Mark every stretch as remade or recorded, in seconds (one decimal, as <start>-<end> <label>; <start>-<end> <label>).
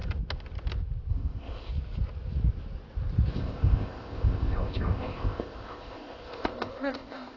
0.0-1.1 recorded; 1.1-1.7 remade; 1.7-3.3 recorded; 3.3-7.4 remade